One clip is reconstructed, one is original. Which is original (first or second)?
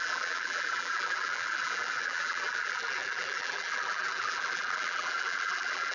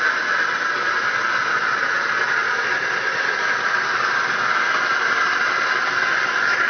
second